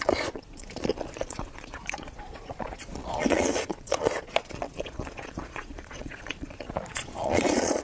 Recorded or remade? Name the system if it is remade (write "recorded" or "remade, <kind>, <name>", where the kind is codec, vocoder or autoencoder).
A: remade, vocoder, Vocos